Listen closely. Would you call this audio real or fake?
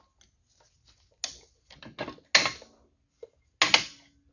real